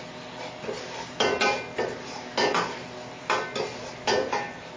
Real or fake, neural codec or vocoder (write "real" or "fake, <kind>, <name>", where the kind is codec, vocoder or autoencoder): real